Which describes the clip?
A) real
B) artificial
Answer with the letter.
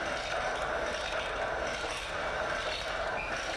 A